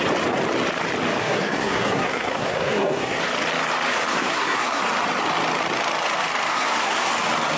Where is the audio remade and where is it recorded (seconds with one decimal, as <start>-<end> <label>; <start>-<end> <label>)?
0.0-1.2 recorded; 1.2-3.2 remade; 3.2-4.1 recorded; 4.1-4.8 remade; 4.8-6.5 recorded; 6.5-7.1 remade; 7.1-7.6 recorded